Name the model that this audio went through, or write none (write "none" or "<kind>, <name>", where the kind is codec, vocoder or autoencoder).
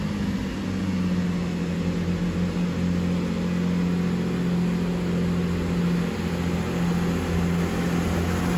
none